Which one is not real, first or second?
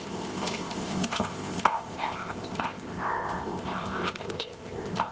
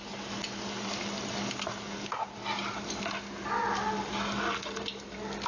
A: first